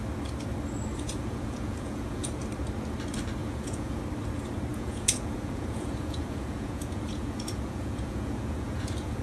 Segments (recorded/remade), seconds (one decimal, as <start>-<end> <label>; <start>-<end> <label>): 0.0-0.9 recorded; 0.9-2.4 remade; 2.4-3.4 recorded; 3.4-4.0 remade; 4.0-4.7 recorded; 4.7-9.2 remade